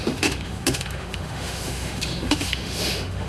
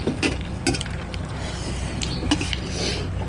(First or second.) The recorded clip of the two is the second